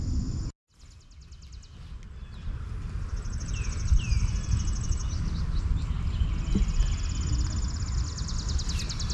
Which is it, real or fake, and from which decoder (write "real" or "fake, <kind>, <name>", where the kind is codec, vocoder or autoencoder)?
real